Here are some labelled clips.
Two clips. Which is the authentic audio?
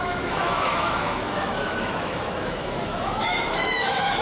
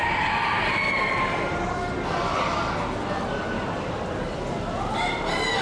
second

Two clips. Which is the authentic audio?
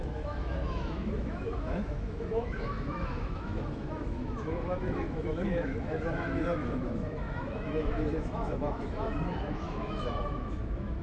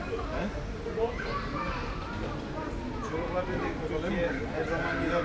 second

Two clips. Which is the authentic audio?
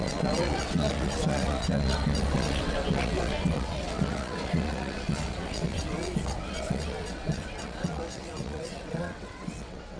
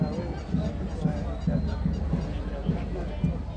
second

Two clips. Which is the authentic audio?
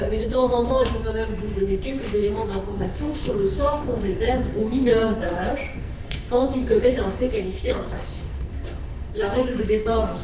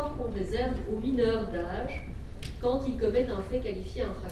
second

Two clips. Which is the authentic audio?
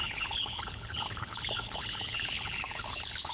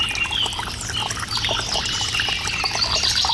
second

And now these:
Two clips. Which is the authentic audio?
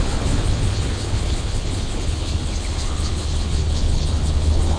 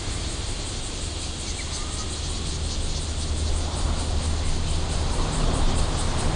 second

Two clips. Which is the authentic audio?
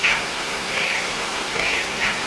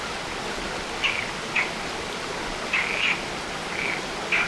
second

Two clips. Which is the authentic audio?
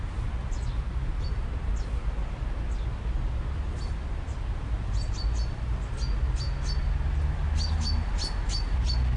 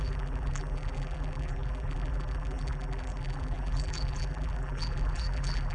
first